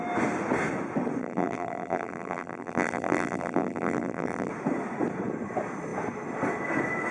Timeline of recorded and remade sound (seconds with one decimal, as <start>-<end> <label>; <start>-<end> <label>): 0.0-1.2 recorded; 1.2-4.5 remade; 4.5-7.1 recorded